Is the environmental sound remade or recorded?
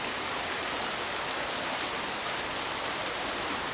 recorded